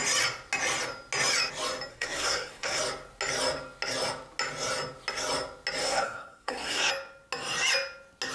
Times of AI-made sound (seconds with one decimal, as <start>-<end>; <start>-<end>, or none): 1.9-2.8; 5.8-6.9